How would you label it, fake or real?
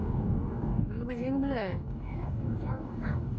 fake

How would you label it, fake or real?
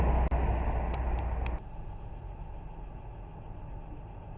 real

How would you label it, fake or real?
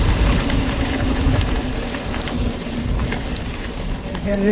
fake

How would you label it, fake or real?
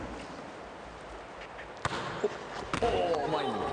real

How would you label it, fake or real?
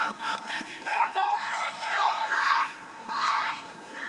fake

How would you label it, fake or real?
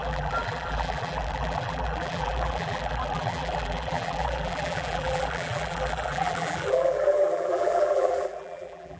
fake